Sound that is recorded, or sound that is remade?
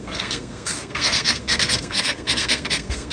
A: remade